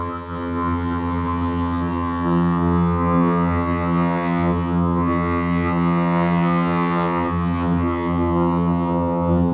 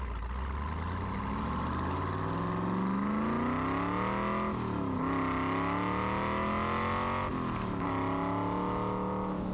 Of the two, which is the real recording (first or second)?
second